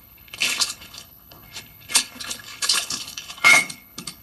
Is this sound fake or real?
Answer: fake